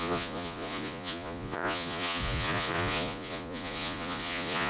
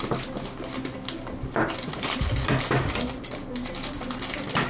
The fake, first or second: first